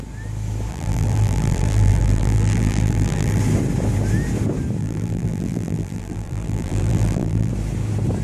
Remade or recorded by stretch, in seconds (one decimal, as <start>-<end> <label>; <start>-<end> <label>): 0.0-0.7 recorded; 0.7-3.4 remade; 3.4-4.8 recorded; 4.8-7.5 remade; 7.5-8.2 recorded